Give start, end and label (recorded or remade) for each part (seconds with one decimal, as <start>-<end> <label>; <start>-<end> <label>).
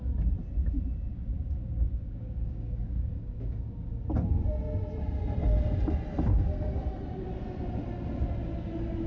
0.0-1.1 recorded; 1.1-4.0 remade; 4.0-9.1 recorded